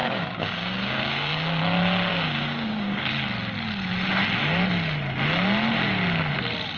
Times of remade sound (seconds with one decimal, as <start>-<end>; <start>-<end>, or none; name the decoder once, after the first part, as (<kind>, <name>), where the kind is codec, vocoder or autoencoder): 0.0-1.6 (codec, DAC); 2.1-3.1